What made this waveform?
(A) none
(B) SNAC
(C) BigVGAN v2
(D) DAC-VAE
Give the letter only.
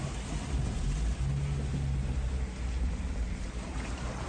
A